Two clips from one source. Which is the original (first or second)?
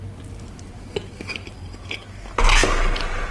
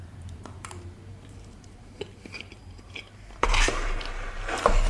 first